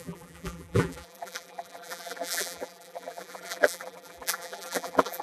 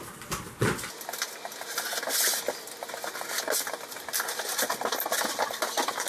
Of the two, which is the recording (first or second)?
second